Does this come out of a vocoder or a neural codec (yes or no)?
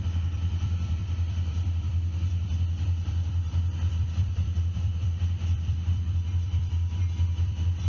yes